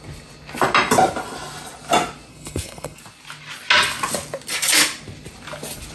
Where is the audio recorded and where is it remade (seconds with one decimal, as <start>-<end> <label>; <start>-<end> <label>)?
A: 0.0-2.3 recorded; 2.3-3.0 remade; 3.0-5.9 recorded